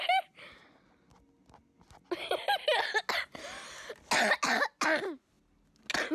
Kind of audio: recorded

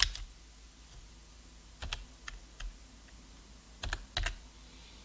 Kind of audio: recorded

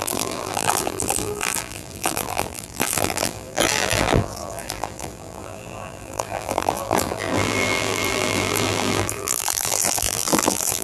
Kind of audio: remade